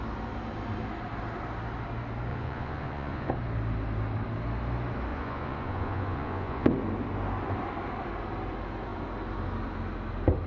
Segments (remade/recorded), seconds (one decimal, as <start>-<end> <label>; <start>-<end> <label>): 0.0-2.3 recorded; 2.3-3.3 remade; 3.3-5.1 recorded; 5.1-6.7 remade; 6.7-10.5 recorded